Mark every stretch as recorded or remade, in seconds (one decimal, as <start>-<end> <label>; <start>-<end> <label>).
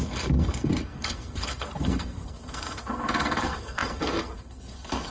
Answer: 0.0-5.1 remade